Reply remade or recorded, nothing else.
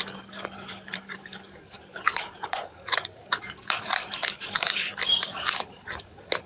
remade